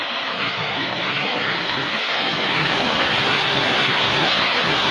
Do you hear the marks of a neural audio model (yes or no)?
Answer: yes